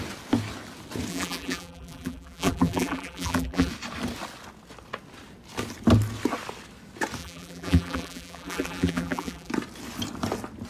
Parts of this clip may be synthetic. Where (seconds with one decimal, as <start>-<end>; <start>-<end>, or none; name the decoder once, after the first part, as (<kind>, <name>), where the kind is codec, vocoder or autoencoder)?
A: 1.1-3.7 (vocoder, BigVGAN v2); 7.2-9.5